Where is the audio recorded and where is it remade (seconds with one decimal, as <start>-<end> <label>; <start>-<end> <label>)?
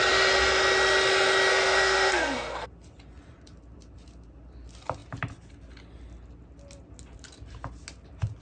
0.0-1.5 recorded; 1.5-2.7 remade; 2.7-8.4 recorded